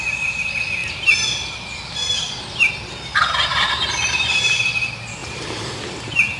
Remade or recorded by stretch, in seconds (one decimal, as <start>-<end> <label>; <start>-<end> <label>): 0.0-3.5 recorded; 3.5-4.6 remade; 4.6-5.2 recorded; 5.2-5.7 remade; 5.7-6.4 recorded